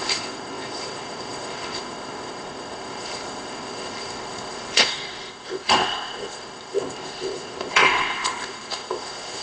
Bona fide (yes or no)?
no